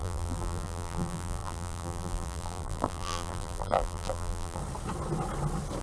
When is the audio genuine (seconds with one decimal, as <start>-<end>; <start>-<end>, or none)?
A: 4.6-5.8